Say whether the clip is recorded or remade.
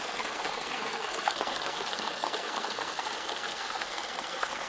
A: remade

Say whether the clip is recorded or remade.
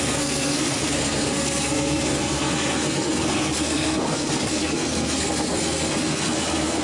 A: remade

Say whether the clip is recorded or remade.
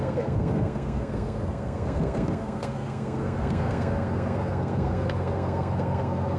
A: remade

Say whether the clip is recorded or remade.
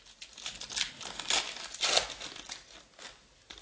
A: recorded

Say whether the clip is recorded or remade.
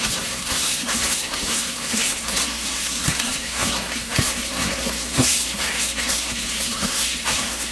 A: remade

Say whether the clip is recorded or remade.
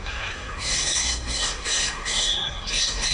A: remade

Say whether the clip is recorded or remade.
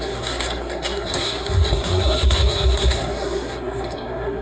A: remade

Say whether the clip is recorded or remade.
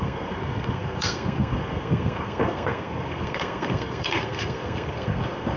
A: remade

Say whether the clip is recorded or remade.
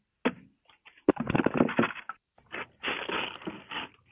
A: recorded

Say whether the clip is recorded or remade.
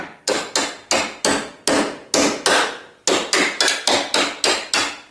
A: recorded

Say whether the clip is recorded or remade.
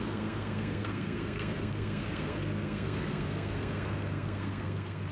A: remade